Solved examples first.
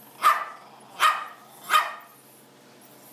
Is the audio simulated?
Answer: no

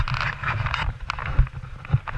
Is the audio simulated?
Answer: no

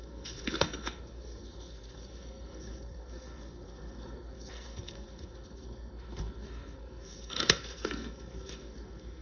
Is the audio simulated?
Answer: yes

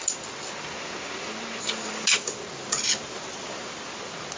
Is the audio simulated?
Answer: no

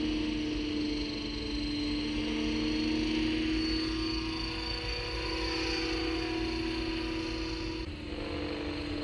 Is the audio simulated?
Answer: no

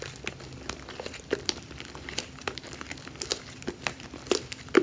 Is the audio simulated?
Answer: yes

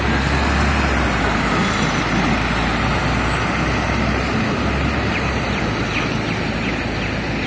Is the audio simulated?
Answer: no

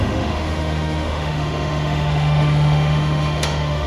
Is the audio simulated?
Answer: yes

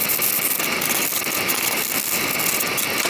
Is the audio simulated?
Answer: no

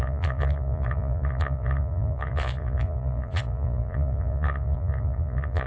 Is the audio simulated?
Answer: yes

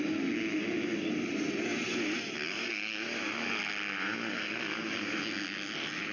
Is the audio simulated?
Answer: no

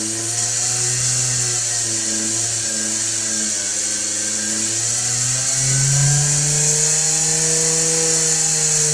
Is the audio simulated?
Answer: no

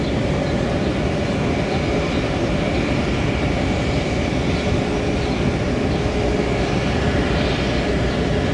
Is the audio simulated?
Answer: no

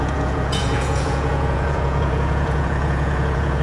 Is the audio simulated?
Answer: yes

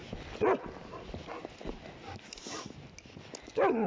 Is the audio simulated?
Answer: no